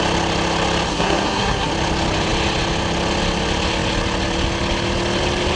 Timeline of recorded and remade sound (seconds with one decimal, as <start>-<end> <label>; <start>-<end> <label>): 0.0-0.9 recorded; 0.9-1.7 remade; 1.7-5.6 recorded